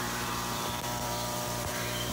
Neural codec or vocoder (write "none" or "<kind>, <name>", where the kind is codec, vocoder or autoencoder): vocoder, BigVGAN v2